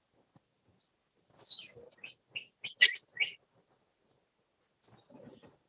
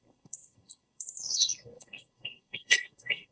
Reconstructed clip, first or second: second